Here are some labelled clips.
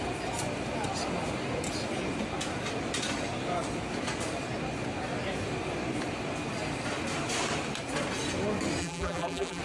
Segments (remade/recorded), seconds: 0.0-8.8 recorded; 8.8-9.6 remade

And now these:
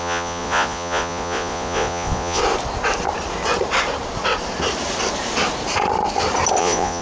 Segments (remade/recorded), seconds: 0.0-2.4 remade; 2.4-6.6 recorded; 6.6-7.0 remade

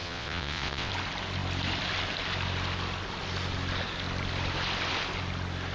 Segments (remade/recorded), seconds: 0.0-0.9 remade; 0.9-5.7 recorded